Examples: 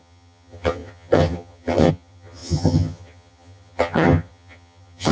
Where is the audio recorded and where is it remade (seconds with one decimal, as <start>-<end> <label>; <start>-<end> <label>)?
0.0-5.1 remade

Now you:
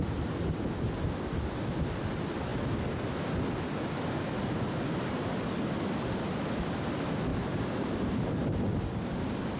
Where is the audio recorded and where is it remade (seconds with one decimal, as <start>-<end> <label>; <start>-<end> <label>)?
0.0-7.3 recorded; 7.3-8.6 remade; 8.6-9.6 recorded

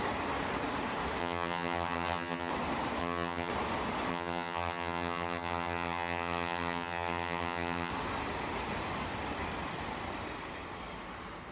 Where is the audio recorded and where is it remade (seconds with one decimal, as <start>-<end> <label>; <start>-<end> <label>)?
0.0-1.2 recorded; 1.2-2.5 remade; 2.5-3.0 recorded; 3.0-3.5 remade; 3.5-4.1 recorded; 4.1-7.9 remade; 7.9-11.5 recorded